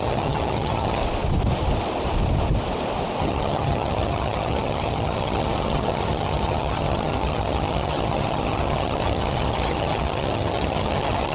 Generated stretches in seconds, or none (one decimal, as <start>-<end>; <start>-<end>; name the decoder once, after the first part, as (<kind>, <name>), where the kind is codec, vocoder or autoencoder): 0.0-1.0 (vocoder, HiFi-GAN); 3.2-11.3